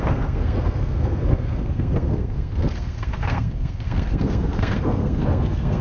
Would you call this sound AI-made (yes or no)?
yes